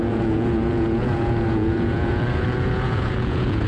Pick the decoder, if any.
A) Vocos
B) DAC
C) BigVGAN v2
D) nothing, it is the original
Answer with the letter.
A